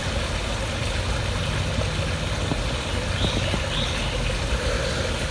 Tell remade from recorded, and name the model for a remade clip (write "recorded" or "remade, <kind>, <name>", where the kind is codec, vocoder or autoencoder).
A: recorded